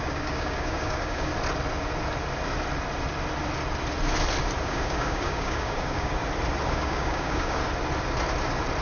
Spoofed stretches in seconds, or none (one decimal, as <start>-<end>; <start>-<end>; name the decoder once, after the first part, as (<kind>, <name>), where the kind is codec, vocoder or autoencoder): 0.0-1.3 (codec, DAC); 4.6-6.2; 6.7-7.6